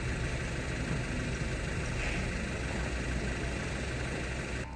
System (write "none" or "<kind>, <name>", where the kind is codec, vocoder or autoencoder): none